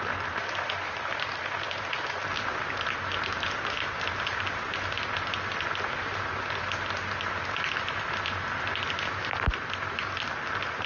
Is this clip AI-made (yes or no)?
no